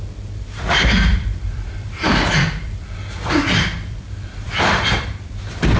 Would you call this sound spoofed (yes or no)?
yes